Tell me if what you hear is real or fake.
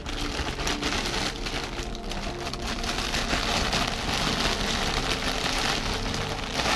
real